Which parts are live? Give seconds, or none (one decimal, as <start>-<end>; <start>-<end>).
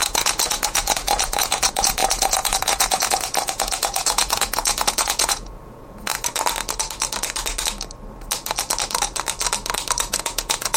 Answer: 6.1-10.1